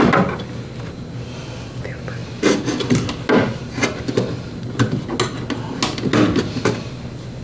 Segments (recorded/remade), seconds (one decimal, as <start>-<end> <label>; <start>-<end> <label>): 0.0-7.4 recorded